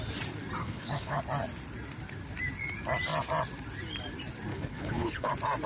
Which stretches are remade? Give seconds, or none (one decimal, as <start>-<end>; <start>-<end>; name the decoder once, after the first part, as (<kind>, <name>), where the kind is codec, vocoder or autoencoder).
0.6-1.2 (codec, HILCodec); 4.5-5.3